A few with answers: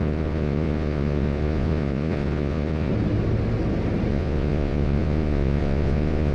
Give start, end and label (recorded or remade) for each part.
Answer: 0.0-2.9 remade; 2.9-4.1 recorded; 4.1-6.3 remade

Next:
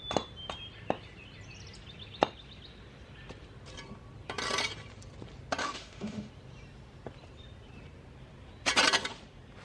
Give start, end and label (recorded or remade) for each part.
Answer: 0.0-5.6 recorded; 5.6-6.3 remade; 6.3-9.6 recorded

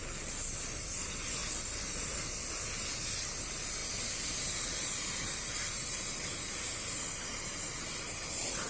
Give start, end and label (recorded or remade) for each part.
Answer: 0.0-8.7 recorded

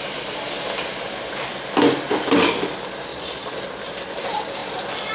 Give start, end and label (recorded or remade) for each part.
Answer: 0.0-3.1 recorded; 3.1-3.6 remade; 3.6-5.1 recorded

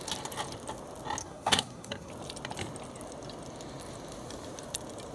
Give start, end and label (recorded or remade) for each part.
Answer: 0.0-1.2 recorded; 1.2-2.1 remade; 2.1-5.1 recorded